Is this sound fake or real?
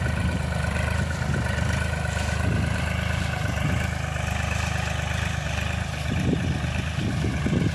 real